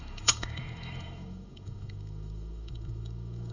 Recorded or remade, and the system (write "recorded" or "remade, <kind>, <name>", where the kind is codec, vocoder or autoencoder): remade, autoencoder, DAC-VAE